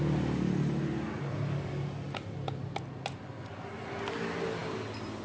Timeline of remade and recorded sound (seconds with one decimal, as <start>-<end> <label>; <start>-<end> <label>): 0.0-5.2 recorded